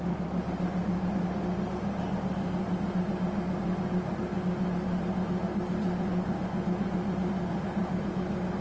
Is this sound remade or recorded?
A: recorded